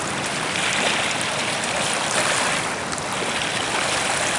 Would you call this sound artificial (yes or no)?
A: no